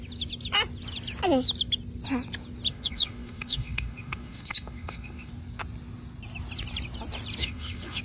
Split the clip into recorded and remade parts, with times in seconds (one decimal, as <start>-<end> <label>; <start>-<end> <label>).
0.0-2.7 recorded; 2.7-5.3 remade; 5.3-7.4 recorded; 7.4-8.0 remade